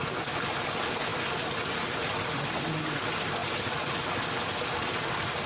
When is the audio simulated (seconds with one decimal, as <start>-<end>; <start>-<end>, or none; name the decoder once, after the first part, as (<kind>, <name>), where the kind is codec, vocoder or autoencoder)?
none